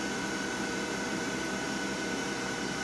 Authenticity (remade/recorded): remade